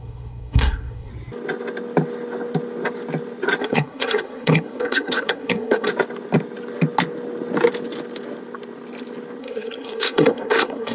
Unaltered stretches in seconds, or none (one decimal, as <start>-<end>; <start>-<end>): 1.1-3.6; 5.9-9.4